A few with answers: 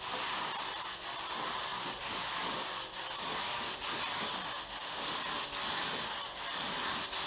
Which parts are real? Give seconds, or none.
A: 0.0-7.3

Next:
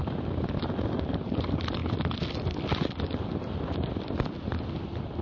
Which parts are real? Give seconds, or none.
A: 1.8-5.2

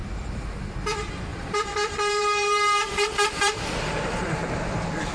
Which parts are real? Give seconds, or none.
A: 0.8-1.3; 4.4-5.1

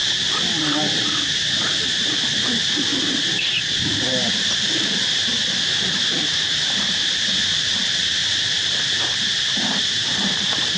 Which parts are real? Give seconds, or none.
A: 0.0-2.9; 7.4-8.2

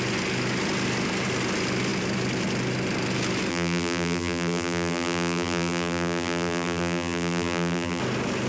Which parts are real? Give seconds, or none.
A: 0.0-3.5; 8.0-8.5

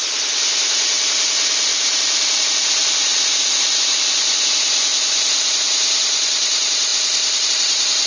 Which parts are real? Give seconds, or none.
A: 1.1-1.7; 2.4-2.8; 6.0-8.1

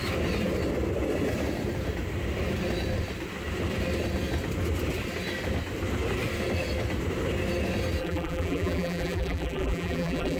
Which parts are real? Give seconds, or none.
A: 0.0-8.0

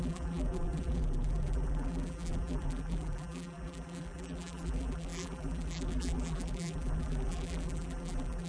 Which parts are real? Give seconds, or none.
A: none